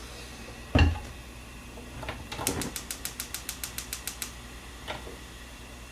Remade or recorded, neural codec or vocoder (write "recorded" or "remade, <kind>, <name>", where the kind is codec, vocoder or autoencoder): recorded